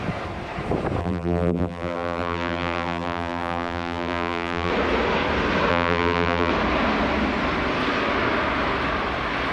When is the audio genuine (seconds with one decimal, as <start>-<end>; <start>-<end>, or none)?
0.0-1.0; 4.7-5.7; 6.5-9.5